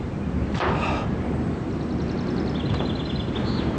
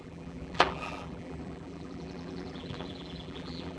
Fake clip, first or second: second